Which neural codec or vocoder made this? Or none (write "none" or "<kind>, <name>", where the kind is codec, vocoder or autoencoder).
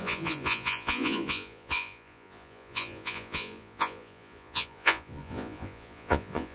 vocoder, Vocos